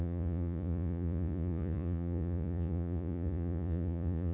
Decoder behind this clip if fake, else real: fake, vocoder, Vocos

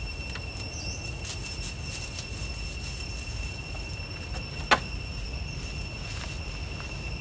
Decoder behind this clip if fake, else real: real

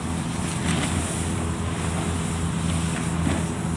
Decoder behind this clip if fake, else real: real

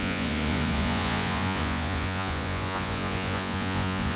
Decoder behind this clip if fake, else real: fake, vocoder, Vocos